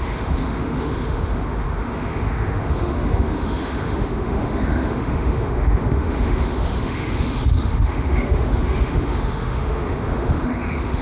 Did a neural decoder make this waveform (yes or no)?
yes